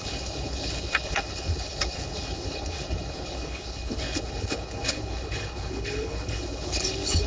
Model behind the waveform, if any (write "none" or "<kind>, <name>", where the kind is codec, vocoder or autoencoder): codec, HILCodec